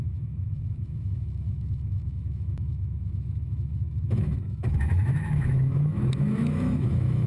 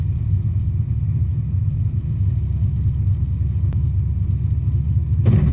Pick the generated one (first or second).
first